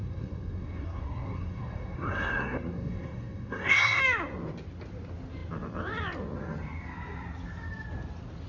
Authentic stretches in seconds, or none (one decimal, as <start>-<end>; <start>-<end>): 4.0-8.5